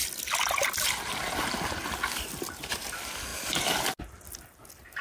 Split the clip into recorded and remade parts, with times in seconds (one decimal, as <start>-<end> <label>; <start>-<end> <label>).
0.0-5.0 recorded